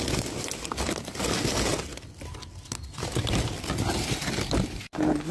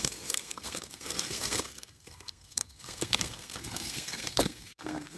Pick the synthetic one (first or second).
second